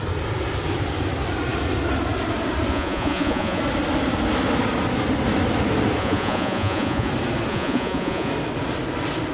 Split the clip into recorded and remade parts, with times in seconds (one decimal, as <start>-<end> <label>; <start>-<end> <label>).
0.0-2.7 recorded; 2.7-3.6 remade; 3.6-6.0 recorded; 6.0-7.1 remade; 7.1-7.5 recorded; 7.5-8.3 remade; 8.3-9.3 recorded